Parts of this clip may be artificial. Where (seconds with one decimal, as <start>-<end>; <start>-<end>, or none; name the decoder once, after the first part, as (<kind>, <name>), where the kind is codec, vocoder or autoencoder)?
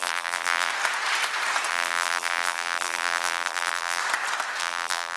0.0-0.7 (vocoder, BigVGAN v2); 1.7-4.0; 4.6-5.2